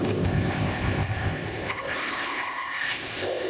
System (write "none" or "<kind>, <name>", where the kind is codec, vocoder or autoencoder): codec, ZipCodec